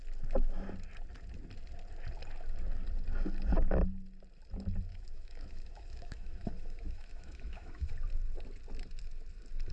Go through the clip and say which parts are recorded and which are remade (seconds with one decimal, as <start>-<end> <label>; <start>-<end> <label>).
0.0-4.9 recorded; 4.9-7.9 remade; 7.9-9.7 recorded